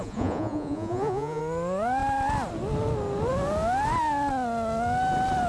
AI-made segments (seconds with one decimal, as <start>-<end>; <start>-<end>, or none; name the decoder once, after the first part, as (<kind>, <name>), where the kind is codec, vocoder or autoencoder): 0.0-1.4 (vocoder, Vocos)

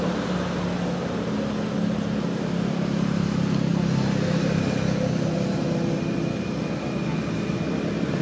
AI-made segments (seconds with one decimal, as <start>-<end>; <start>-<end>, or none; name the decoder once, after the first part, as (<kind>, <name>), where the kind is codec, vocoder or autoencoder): none

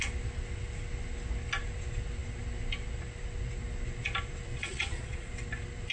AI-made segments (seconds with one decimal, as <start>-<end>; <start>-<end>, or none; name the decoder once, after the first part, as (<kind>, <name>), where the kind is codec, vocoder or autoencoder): 4.6-5.3 (vocoder, Vocos)

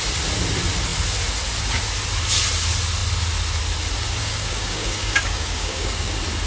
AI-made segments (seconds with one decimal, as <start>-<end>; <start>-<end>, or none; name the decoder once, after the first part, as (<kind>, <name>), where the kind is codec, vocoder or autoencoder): 4.2-6.1 (codec, DAC)

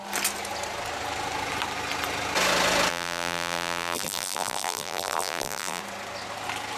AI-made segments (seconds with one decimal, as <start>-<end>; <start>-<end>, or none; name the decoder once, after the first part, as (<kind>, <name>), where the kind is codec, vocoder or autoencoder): 2.9-5.8 (vocoder, BigVGAN v2)